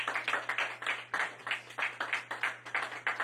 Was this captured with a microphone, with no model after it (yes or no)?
yes